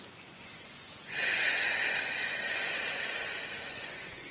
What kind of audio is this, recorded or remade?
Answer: remade